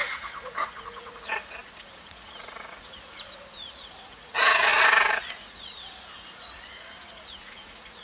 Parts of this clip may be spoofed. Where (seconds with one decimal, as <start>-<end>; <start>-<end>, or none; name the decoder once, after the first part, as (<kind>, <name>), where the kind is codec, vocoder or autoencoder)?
0.0-8.0 (vocoder, Vocos)